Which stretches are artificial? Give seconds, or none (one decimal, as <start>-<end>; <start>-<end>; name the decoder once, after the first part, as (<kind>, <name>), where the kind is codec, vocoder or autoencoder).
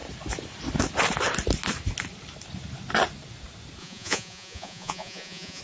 3.8-5.6 (vocoder, Vocos)